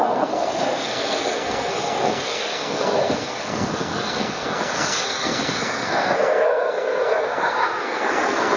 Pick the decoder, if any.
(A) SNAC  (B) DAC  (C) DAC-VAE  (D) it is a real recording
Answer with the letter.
A